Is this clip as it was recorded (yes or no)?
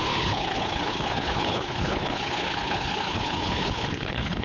no